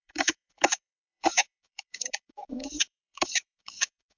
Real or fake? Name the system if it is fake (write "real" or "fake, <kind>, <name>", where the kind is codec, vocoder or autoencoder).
fake, codec, DAC